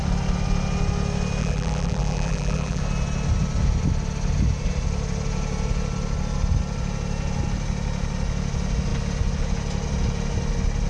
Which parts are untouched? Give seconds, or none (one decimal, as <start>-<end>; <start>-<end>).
0.0-1.4; 2.8-10.9

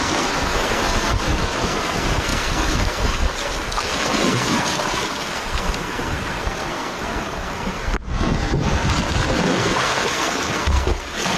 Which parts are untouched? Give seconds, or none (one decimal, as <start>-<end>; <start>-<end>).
none

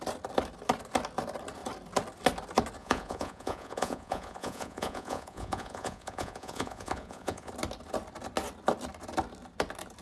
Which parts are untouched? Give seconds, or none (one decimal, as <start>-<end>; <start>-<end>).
0.0-2.8; 7.5-10.0

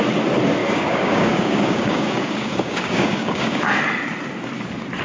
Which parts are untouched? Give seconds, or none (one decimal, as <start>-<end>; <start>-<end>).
0.0-0.6; 3.6-5.0

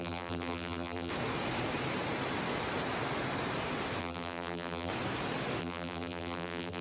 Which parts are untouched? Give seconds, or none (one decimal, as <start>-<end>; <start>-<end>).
1.1-4.0; 4.9-5.6

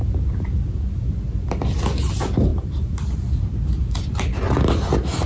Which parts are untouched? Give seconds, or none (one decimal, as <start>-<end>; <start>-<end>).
0.0-2.5; 3.1-5.3